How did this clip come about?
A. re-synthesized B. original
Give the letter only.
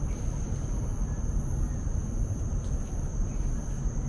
B